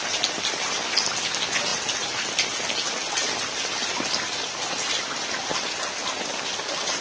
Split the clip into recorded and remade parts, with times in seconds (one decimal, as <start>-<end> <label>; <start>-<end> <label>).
0.0-7.0 recorded